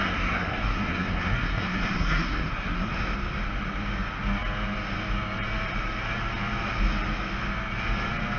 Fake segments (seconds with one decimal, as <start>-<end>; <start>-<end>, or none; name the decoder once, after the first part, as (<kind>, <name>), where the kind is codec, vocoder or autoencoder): 0.0-2.9 (codec, SNAC)